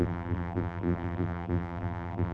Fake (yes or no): yes